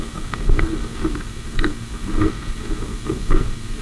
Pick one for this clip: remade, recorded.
remade